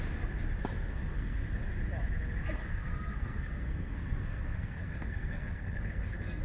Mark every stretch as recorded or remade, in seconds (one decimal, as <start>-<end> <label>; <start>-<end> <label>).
0.0-0.6 recorded; 0.6-1.5 remade; 1.5-2.6 recorded; 2.6-6.4 remade